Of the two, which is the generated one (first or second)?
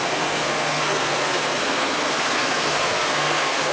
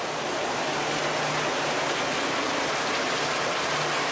first